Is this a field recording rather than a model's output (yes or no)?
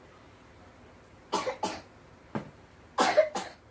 yes